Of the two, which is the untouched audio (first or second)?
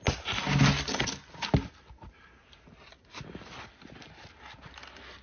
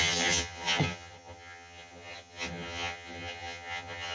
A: first